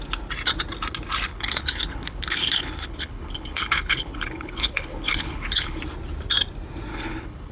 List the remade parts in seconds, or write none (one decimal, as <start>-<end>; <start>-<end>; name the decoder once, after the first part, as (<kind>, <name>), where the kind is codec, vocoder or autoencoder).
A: 1.3-5.8 (codec, HILCodec); 6.9-7.5